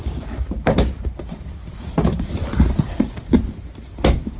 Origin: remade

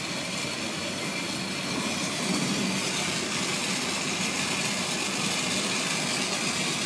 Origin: recorded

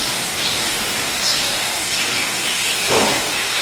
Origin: remade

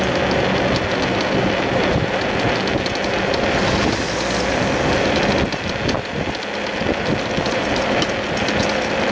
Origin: recorded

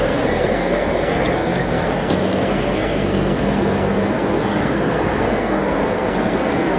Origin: remade